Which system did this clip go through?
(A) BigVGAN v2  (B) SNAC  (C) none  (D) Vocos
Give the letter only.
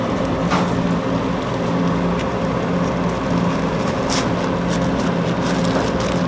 C